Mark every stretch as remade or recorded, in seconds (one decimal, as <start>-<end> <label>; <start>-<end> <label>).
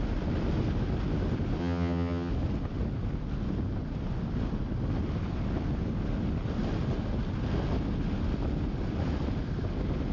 0.0-1.6 recorded; 1.6-2.3 remade; 2.3-10.1 recorded